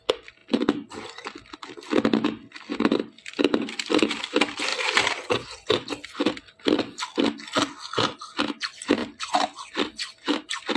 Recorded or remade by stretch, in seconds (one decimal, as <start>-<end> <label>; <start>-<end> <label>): 0.0-9.0 recorded; 9.0-10.8 remade